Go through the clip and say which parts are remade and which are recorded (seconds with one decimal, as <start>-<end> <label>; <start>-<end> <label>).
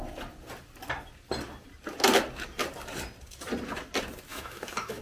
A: 0.0-4.3 recorded; 4.3-5.0 remade